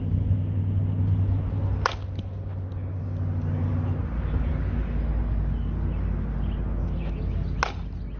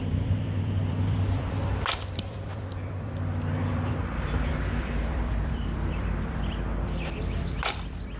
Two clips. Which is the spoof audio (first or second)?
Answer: second